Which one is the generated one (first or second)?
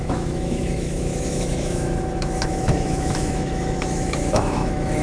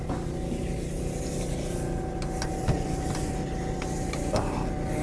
first